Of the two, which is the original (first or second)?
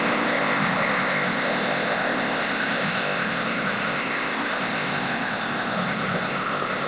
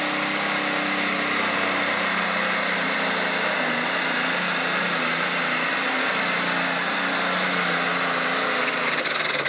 second